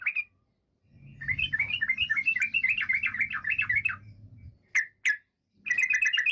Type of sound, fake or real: real